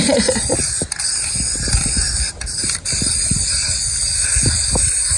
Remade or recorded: recorded